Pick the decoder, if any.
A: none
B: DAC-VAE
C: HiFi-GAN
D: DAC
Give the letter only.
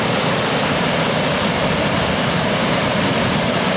A